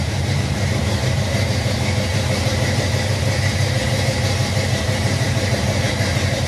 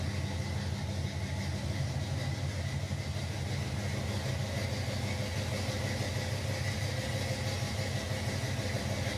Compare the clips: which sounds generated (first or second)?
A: first